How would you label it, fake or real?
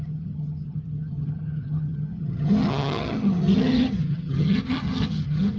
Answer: fake